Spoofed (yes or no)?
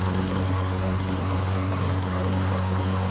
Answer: yes